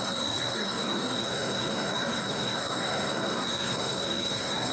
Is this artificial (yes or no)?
yes